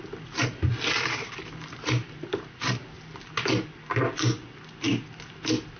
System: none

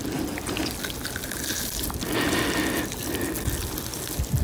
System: none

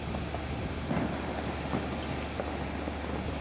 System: none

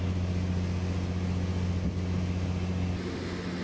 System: none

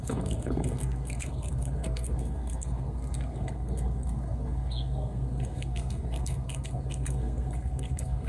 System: codec, SNAC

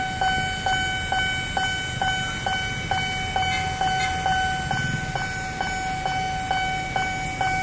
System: none